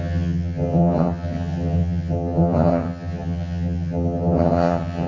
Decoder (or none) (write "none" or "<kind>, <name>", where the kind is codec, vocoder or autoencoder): vocoder, HiFi-GAN